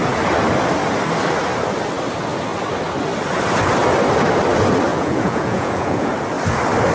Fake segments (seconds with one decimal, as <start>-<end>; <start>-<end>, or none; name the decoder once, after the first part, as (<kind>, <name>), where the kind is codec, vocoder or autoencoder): 4.9-6.1 (vocoder, Vocos)